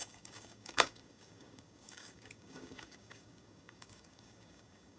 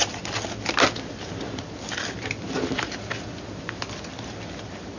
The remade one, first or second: first